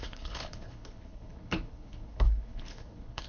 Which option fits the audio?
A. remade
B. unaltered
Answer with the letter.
A